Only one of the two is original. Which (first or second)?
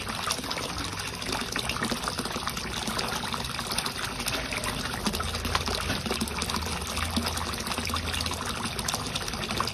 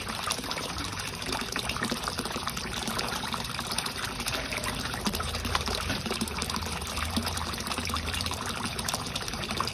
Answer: first